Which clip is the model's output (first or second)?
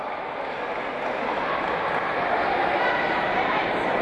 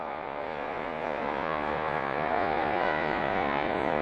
second